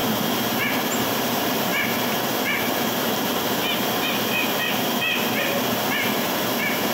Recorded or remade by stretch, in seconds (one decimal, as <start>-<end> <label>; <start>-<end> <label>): 0.0-1.1 recorded; 1.1-1.7 remade; 1.7-2.6 recorded; 2.6-3.6 remade; 3.6-6.9 recorded